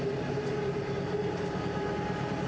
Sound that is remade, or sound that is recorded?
recorded